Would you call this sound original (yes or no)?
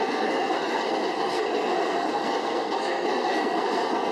no